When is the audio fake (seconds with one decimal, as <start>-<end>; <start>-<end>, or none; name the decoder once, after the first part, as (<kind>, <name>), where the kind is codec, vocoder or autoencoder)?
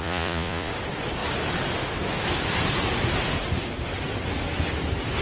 0.0-0.7 (vocoder, Vocos)